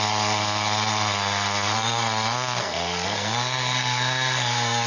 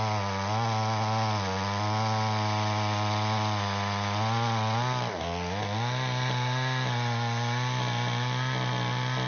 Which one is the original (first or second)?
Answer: second